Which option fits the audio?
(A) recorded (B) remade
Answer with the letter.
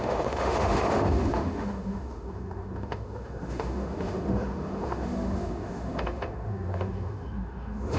B